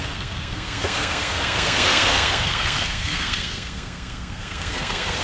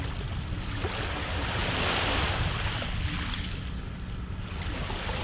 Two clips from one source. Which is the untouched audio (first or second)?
second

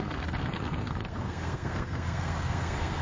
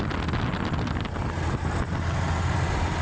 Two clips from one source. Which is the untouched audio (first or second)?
second